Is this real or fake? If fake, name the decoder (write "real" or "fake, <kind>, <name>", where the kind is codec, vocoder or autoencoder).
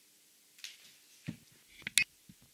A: real